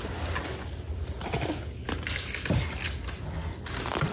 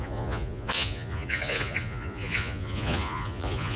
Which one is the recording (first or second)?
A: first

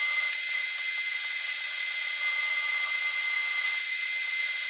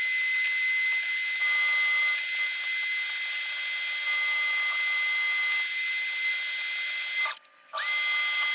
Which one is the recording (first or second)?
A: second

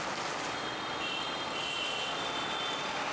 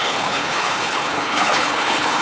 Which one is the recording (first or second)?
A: first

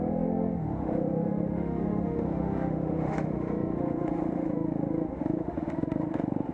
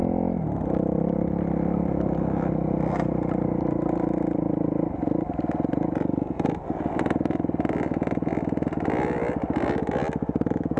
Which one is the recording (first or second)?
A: second